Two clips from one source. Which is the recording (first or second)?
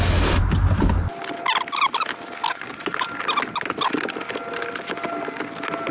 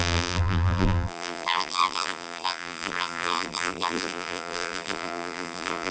first